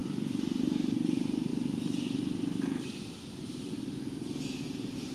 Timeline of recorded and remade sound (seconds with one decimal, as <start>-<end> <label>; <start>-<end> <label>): 0.0-0.6 recorded; 0.6-1.5 remade; 1.5-4.6 recorded; 4.6-5.1 remade